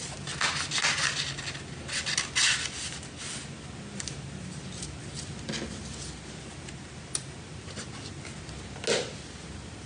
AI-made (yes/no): no